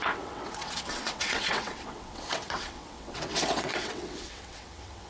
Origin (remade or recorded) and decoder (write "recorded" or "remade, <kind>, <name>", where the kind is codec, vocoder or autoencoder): remade, vocoder, WaveNeXt